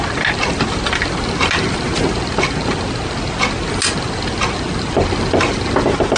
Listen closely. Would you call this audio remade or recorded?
recorded